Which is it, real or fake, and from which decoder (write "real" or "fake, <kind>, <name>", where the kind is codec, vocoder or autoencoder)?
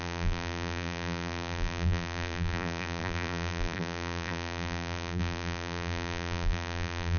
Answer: fake, vocoder, BigVGAN v2